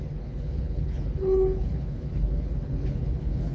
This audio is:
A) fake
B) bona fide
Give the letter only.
A